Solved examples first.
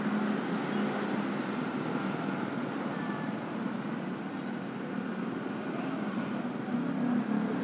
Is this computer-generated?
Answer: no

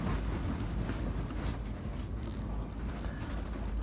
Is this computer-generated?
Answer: no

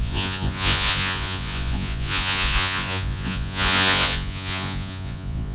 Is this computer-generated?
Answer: yes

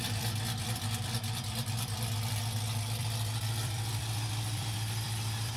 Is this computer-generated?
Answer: yes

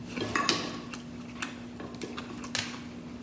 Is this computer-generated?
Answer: no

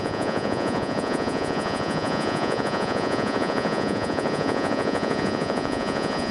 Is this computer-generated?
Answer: yes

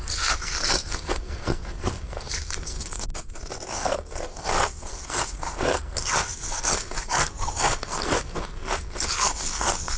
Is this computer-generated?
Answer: yes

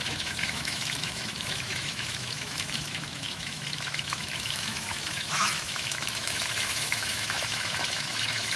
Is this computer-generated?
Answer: yes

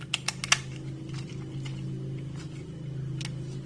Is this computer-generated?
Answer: no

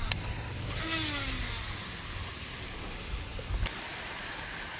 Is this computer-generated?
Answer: no